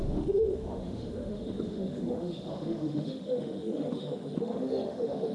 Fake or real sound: fake